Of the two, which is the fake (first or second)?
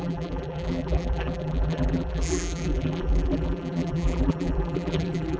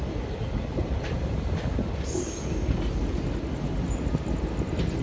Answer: first